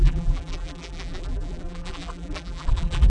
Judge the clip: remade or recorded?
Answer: remade